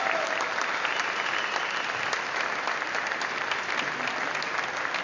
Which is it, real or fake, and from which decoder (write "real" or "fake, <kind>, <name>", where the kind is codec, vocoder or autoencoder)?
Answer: real